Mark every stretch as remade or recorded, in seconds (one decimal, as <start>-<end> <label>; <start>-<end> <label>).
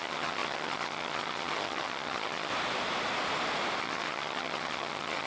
0.0-2.5 remade; 2.5-3.8 recorded; 3.8-5.3 remade